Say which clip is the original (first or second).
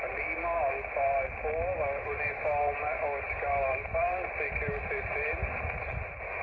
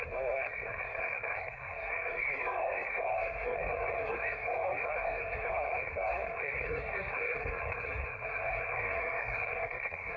first